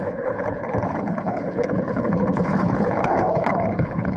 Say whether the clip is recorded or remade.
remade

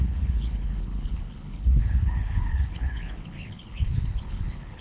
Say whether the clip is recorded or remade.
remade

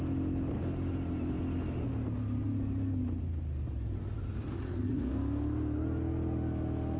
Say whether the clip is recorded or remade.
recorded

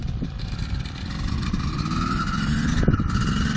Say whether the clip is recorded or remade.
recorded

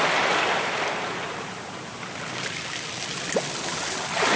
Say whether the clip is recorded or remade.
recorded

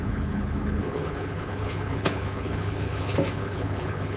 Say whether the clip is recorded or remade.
remade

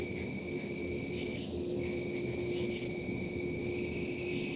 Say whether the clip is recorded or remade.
recorded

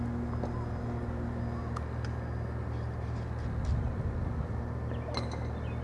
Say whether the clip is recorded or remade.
recorded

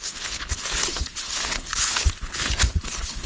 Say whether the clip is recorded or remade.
remade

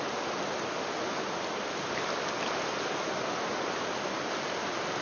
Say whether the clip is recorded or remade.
recorded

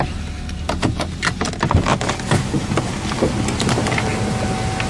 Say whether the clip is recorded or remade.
recorded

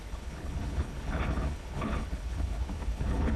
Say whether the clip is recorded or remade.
remade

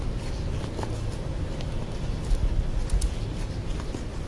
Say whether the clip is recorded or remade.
recorded